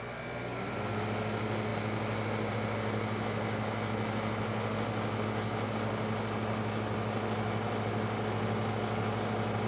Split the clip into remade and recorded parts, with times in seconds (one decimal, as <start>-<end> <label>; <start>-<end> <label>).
0.0-9.7 recorded